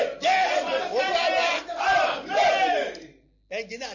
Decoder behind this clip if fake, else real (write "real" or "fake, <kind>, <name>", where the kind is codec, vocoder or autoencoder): real